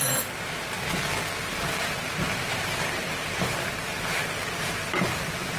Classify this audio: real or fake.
real